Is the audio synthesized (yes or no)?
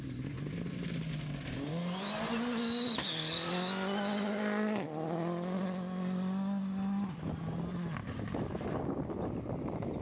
no